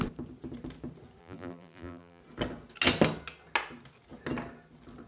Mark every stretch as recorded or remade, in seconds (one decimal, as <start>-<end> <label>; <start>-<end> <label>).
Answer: 0.0-1.2 recorded; 1.2-2.2 remade; 2.2-5.1 recorded